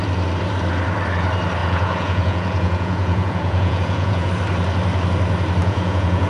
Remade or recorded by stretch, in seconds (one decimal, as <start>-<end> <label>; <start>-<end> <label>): 0.0-1.6 recorded; 1.6-4.3 remade; 4.3-5.6 recorded; 5.6-6.3 remade